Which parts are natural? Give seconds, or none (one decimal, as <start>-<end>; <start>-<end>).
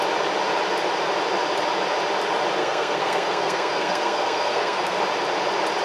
0.0-2.6; 5.0-5.8